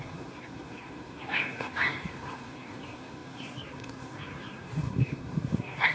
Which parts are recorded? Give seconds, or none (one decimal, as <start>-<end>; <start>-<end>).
none

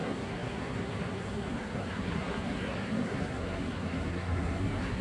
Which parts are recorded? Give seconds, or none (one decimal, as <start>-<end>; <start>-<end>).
none

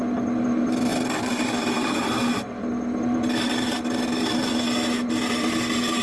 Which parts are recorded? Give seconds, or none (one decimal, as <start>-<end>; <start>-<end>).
0.0-6.0